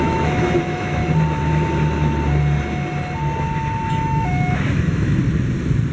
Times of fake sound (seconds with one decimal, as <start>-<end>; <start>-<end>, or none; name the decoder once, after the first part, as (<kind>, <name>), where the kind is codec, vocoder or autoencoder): 0.0-1.0 (autoencoder, DAC-VAE); 3.9-5.2